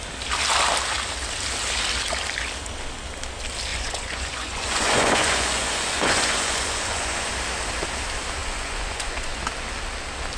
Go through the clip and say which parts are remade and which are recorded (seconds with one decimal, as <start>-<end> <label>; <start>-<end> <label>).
0.0-3.7 recorded; 3.7-7.3 remade; 7.3-8.4 recorded; 8.4-9.4 remade; 9.4-10.4 recorded